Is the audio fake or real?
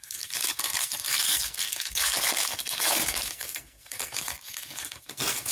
fake